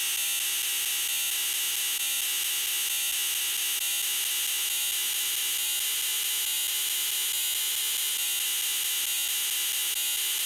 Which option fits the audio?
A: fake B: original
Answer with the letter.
B